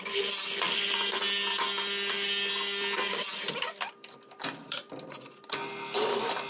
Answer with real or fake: real